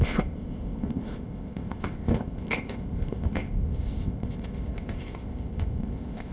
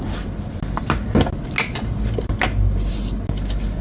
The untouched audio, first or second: second